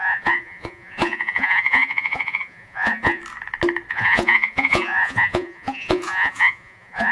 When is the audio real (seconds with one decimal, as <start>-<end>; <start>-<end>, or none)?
3.2-3.9